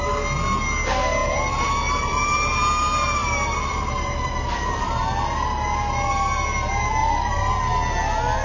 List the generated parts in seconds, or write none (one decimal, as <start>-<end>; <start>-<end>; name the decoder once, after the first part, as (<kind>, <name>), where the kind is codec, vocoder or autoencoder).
1.2-2.6 (vocoder, BigVGAN v2); 3.2-5.0; 7.0-7.5